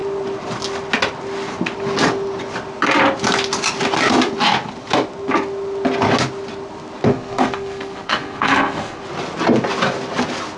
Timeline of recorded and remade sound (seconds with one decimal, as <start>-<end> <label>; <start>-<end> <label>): 0.0-7.1 recorded; 7.1-9.0 remade; 9.0-10.6 recorded

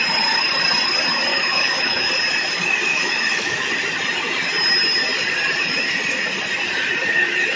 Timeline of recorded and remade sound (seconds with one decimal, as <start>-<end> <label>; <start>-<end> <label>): 0.0-1.3 recorded; 1.3-2.1 remade; 2.1-2.9 recorded; 2.9-3.7 remade; 3.7-7.6 recorded